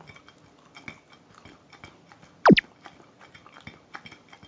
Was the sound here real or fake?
real